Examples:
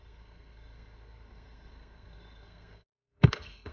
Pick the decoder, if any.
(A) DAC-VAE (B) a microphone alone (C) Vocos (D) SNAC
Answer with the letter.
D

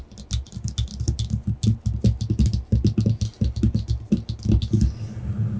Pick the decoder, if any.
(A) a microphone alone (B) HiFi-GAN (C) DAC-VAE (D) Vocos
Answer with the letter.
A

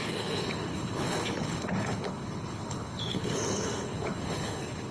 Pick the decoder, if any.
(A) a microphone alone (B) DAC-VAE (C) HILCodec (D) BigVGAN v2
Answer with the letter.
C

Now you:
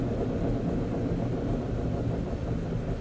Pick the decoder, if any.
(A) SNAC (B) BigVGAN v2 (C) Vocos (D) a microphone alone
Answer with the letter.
D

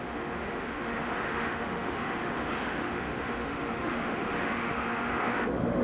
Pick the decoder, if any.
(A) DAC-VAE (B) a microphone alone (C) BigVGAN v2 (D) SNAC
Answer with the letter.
A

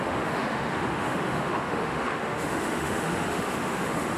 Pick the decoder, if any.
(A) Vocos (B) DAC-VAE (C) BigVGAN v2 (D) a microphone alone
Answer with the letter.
B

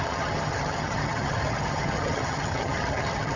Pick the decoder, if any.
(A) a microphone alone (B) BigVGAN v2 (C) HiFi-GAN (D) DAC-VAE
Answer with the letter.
C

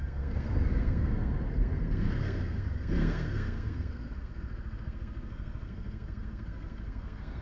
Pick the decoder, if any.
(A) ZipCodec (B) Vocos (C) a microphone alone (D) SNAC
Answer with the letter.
D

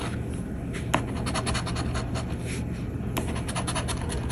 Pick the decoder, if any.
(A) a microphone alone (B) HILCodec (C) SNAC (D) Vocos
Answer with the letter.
A